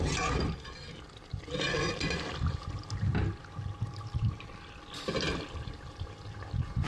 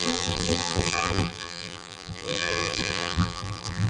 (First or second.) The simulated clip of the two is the second